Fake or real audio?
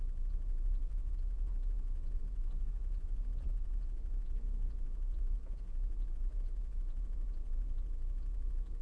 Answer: fake